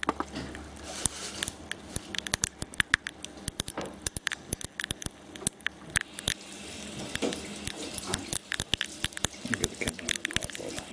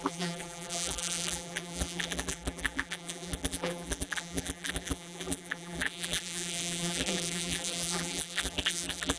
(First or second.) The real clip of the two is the first